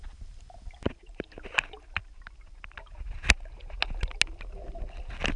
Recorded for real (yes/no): yes